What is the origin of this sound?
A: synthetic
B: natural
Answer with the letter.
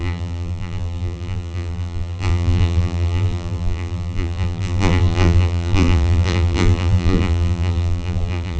A